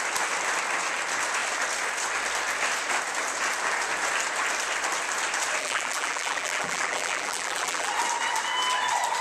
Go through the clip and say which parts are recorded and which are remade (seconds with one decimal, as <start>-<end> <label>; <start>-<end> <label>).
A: 0.0-5.6 recorded; 5.6-7.9 remade; 7.9-9.2 recorded